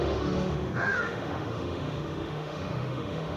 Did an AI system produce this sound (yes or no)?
yes